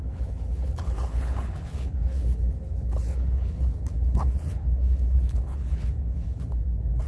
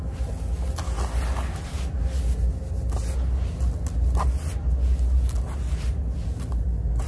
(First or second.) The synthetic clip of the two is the first